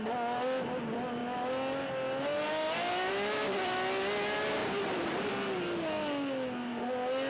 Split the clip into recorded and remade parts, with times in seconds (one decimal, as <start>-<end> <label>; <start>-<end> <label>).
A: 0.0-4.6 recorded; 4.6-5.3 remade; 5.3-7.3 recorded